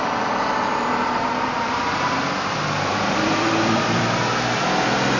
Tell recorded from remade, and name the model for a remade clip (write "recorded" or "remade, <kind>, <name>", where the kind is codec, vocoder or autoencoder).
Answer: remade, vocoder, BigVGAN v2